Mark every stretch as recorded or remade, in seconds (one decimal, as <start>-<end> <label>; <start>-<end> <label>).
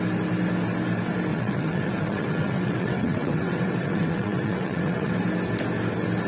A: 0.0-1.3 recorded; 1.3-5.1 remade; 5.1-6.3 recorded